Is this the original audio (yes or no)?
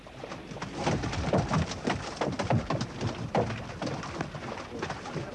yes